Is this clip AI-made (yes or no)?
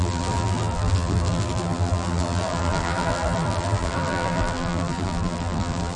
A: yes